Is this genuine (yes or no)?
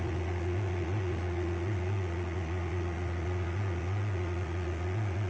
no